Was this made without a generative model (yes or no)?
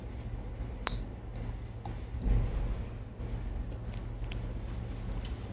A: yes